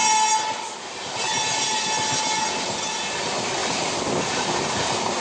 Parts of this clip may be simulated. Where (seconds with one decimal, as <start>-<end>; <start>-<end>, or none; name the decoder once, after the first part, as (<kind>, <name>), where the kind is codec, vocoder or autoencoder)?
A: none